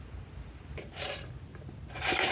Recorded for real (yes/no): yes